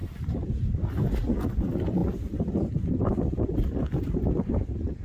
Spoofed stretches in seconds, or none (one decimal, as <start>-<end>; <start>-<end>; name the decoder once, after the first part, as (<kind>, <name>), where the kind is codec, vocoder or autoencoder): none